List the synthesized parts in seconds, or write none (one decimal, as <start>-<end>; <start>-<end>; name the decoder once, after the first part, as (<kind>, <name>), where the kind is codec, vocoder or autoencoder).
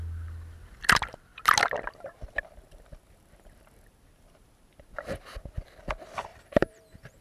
6.3-7.2 (vocoder, BigVGAN v2)